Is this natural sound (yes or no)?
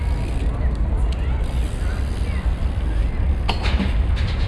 yes